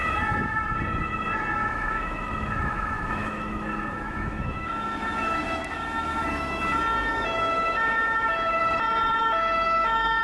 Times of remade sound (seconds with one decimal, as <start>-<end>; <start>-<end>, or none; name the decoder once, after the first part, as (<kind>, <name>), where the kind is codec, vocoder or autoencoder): 1.6-6.6 (autoencoder, DAC-VAE); 7.1-8.6; 9.2-10.2